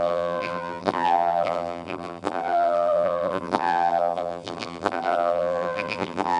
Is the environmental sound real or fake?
fake